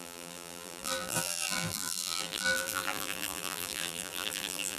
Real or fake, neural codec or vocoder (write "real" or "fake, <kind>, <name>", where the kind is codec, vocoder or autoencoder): fake, vocoder, BigVGAN v2